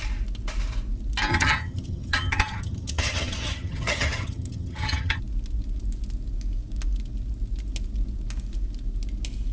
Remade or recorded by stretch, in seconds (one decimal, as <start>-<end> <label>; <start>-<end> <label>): 0.0-1.3 recorded; 1.3-5.2 remade; 5.2-9.5 recorded